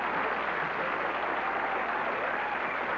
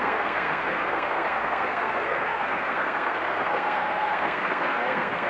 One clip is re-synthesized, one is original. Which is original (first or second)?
first